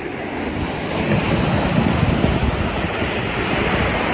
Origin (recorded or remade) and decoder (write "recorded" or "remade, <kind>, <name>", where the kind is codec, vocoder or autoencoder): recorded